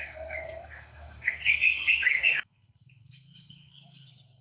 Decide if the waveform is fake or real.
fake